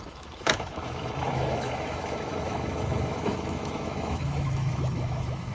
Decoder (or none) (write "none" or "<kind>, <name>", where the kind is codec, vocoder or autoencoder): autoencoder, DAC-VAE